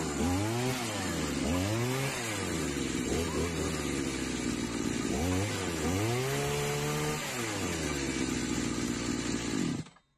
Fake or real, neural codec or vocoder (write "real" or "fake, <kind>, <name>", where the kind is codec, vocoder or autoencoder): real